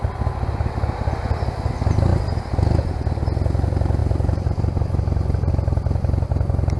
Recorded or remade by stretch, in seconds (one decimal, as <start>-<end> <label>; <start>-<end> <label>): 0.0-4.0 recorded; 4.0-5.5 remade; 5.5-6.8 recorded